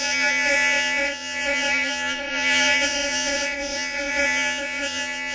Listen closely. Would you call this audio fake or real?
fake